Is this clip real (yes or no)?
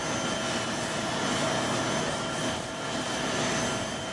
yes